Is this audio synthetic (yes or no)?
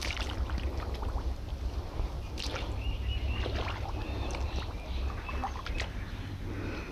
no